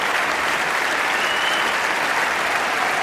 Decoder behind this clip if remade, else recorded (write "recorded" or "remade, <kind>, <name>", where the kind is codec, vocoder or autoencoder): recorded